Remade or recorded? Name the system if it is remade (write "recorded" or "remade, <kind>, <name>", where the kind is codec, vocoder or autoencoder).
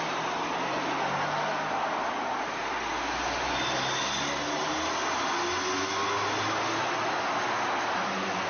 recorded